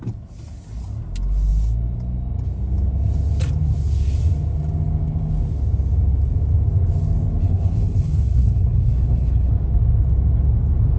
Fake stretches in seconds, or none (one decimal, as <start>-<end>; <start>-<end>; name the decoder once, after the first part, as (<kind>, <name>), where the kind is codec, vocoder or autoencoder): 7.4-9.5 (codec, HILCodec)